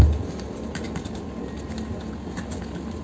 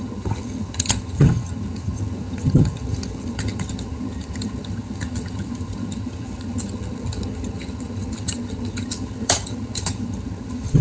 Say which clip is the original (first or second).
first